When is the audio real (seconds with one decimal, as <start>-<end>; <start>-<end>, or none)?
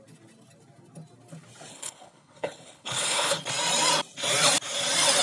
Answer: 0.0-1.7; 3.4-5.2